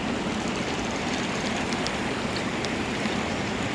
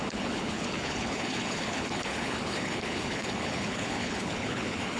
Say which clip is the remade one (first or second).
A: second